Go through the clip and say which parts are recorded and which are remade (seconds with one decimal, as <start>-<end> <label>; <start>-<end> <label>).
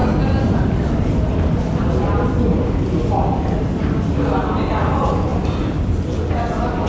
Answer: 0.0-6.9 recorded